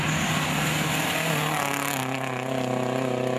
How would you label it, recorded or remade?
recorded